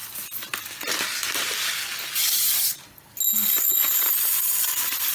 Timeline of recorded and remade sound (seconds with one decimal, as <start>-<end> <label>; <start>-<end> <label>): 0.0-5.1 recorded